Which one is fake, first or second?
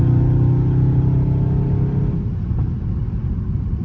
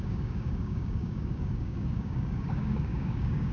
second